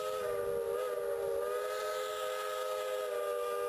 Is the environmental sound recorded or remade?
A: recorded